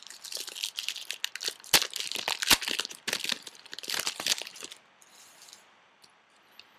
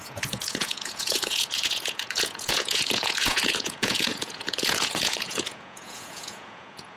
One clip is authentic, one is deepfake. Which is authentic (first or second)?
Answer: first